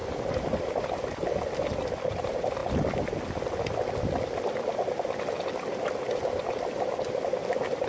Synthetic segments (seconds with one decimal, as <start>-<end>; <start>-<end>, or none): none